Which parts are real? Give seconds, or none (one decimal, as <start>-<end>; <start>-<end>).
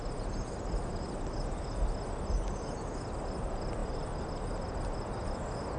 0.0-5.8